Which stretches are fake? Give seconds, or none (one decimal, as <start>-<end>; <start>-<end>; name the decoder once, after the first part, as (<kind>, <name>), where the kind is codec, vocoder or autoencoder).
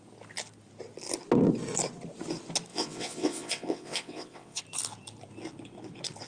2.7-4.6 (vocoder, WaveNeXt)